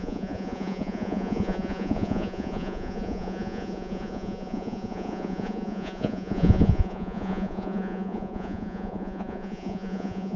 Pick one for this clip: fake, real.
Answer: fake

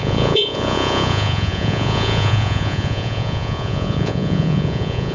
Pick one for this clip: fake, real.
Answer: fake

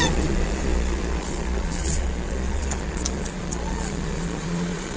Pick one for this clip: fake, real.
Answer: fake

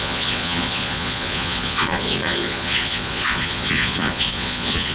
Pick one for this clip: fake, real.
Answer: fake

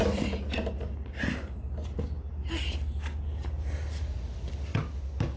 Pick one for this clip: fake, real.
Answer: real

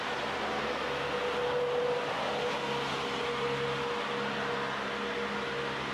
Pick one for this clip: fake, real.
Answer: real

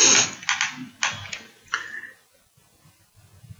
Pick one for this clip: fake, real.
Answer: real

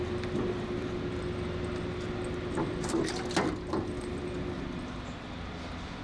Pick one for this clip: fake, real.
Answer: real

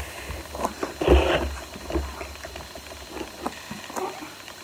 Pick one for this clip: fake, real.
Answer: real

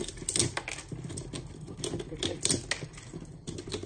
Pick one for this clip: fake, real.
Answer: real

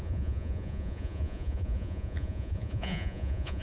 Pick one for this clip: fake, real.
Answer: fake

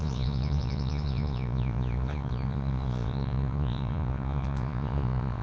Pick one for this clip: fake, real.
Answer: fake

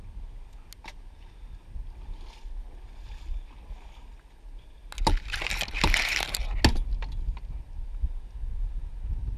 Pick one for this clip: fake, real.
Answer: real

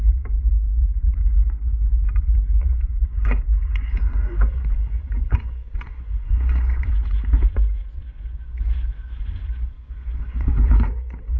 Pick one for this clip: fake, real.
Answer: fake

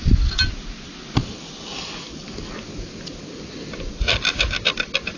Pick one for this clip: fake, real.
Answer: real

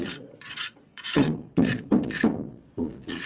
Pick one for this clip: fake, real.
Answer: fake